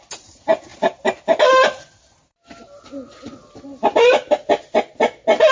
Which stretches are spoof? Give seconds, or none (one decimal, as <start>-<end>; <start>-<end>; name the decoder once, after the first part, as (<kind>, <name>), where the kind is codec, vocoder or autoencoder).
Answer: none